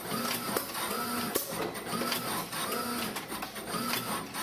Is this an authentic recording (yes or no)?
yes